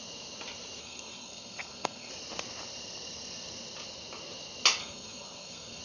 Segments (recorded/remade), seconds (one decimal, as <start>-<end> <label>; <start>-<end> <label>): 0.0-0.8 recorded; 0.8-2.1 remade; 2.1-4.8 recorded; 4.8-5.8 remade